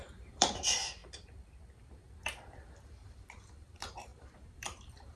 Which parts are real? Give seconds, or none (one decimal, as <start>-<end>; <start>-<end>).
1.0-3.2